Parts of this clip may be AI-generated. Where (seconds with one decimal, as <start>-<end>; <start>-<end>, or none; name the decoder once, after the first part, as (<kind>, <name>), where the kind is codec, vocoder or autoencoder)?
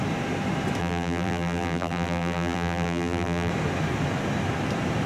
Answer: 0.8-3.5 (vocoder, BigVGAN v2)